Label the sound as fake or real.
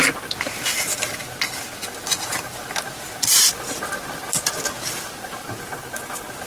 real